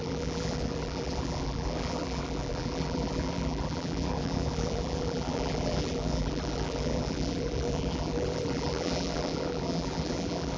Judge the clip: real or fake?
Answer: fake